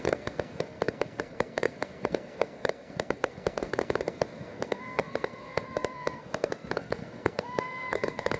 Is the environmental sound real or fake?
fake